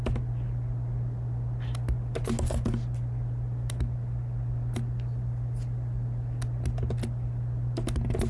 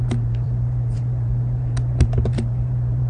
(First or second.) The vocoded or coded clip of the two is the second